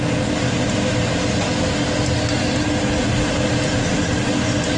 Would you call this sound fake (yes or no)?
no